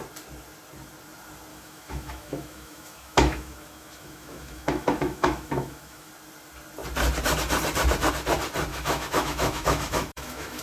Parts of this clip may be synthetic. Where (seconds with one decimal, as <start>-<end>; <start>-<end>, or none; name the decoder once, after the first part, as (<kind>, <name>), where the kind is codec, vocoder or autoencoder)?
1.5-6.1 (autoencoder, DAC-VAE); 8.7-10.6

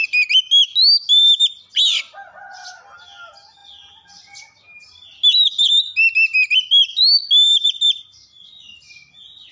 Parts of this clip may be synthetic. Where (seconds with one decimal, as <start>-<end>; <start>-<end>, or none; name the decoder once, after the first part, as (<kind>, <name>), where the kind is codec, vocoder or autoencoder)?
none

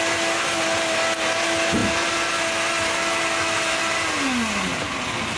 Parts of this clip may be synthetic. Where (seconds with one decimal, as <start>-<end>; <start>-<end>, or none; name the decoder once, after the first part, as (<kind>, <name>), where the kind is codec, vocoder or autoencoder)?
none

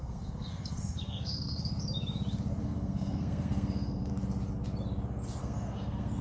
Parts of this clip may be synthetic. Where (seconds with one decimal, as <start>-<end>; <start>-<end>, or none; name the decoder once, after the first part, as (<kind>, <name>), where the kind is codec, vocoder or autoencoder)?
0.0-1.7 (codec, SNAC); 2.6-4.1; 5.4-6.2

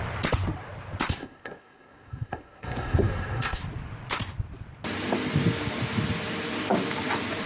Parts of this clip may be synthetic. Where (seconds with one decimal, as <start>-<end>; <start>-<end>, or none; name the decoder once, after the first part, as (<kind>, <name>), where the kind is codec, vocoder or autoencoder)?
1.2-3.6 (codec, SNAC)

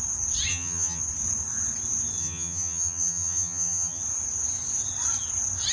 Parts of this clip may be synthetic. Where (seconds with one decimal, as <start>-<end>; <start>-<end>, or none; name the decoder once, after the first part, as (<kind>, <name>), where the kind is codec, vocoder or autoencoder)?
0.5-1.0 (vocoder, HiFi-GAN); 2.2-4.0

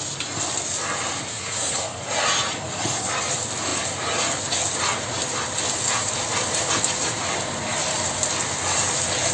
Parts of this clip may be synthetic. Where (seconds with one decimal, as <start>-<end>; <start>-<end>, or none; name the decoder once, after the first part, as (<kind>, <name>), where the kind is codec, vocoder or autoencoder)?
1.3-2.0 (codec, SNAC)

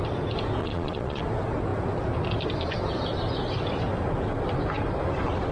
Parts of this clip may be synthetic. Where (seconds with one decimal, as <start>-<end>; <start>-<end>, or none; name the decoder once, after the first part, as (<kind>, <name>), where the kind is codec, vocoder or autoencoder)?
0.6-1.2 (vocoder, Vocos)